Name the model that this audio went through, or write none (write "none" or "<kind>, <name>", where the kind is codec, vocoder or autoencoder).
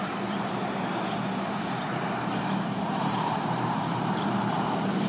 vocoder, BigVGAN v2